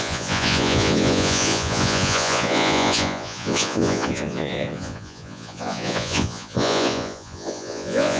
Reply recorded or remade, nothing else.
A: remade